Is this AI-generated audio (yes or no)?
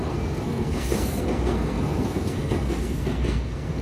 yes